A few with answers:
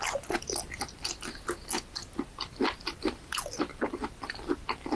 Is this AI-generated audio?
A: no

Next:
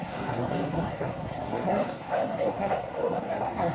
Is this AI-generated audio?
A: yes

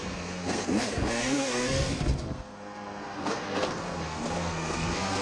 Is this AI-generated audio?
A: yes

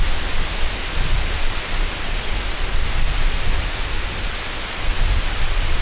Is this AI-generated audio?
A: no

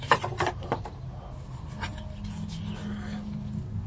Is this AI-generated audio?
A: no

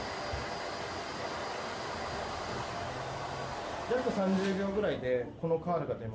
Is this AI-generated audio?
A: no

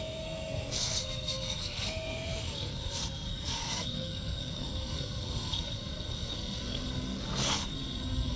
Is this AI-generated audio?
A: yes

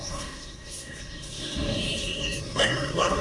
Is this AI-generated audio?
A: yes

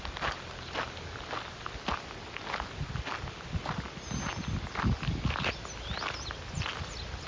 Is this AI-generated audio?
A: no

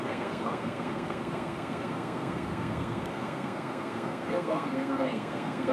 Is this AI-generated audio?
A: yes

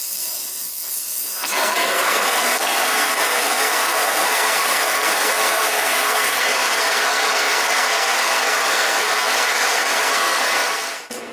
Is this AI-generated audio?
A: yes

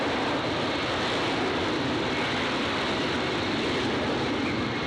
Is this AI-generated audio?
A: no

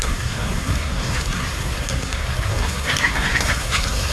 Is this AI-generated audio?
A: yes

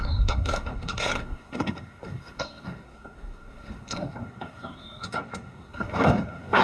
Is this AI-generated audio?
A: yes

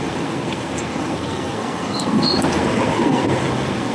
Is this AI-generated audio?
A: yes